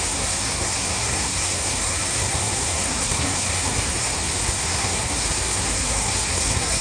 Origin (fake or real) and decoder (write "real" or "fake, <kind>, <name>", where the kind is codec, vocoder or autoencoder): fake, codec, SNAC